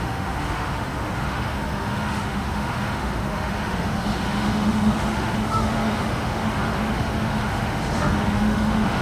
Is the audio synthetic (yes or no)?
yes